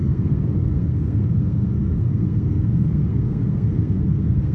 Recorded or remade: remade